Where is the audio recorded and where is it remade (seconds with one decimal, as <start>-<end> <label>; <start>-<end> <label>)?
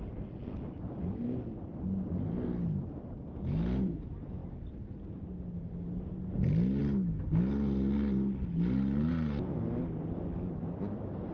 0.0-11.3 recorded